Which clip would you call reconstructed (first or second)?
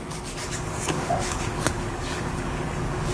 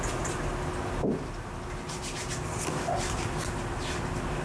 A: first